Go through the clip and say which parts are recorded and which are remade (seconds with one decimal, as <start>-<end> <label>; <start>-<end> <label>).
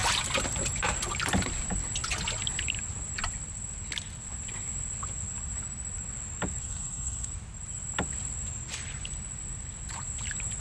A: 0.0-6.6 recorded; 6.6-7.3 remade; 7.3-10.6 recorded